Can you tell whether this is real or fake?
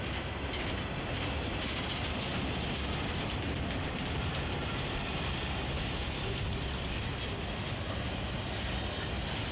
real